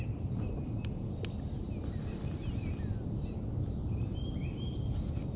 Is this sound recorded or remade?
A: recorded